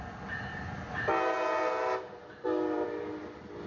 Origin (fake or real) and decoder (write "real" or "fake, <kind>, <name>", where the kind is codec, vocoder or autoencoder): real